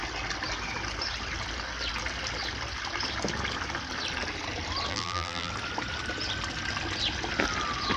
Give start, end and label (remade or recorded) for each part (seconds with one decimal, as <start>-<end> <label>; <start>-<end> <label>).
0.0-4.9 recorded; 4.9-5.5 remade; 5.5-8.0 recorded